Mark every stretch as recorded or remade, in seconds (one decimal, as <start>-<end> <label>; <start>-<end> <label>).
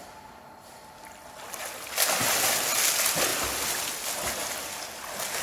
0.0-5.4 recorded